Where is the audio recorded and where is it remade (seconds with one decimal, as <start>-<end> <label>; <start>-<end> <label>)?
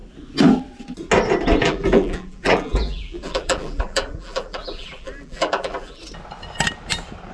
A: 0.0-1.6 recorded; 1.6-6.0 remade; 6.0-7.3 recorded